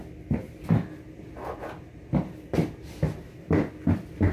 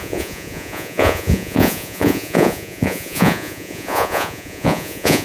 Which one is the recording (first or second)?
first